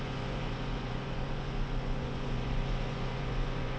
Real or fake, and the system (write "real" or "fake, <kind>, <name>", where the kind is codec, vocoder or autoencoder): fake, vocoder, Vocos